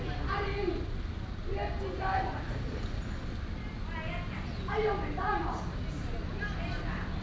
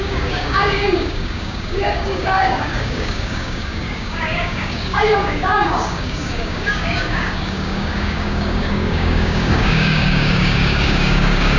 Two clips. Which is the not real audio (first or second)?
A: second